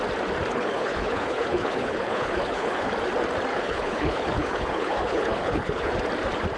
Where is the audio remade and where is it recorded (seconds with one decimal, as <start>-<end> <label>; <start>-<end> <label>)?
0.0-0.5 recorded; 0.5-2.9 remade; 2.9-3.5 recorded; 3.5-5.9 remade; 5.9-6.6 recorded